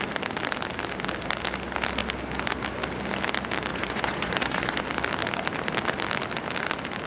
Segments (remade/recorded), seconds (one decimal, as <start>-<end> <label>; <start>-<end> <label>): 0.0-3.7 recorded; 3.7-4.8 remade; 4.8-7.1 recorded